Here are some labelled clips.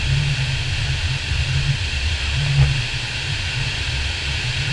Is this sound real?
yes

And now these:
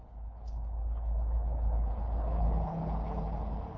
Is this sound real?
no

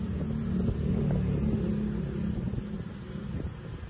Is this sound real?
yes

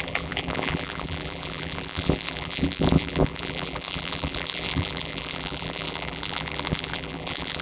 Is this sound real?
no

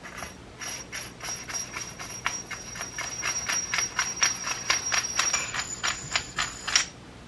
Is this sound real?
yes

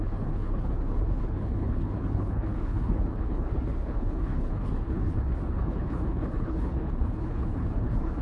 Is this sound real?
no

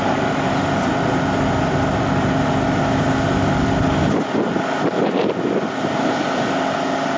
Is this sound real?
yes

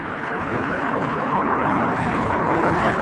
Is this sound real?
no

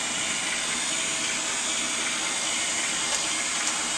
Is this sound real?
yes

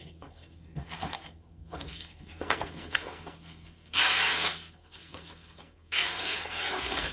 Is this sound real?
no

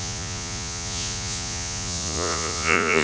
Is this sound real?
no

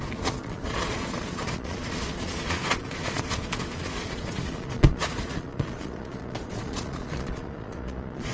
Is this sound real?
no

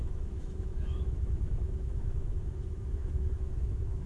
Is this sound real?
no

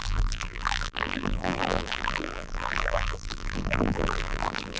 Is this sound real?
no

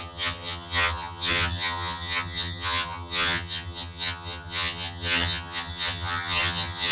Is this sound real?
no